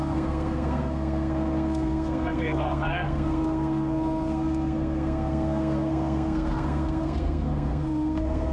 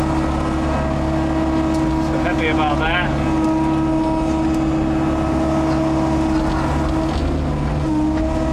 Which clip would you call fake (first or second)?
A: first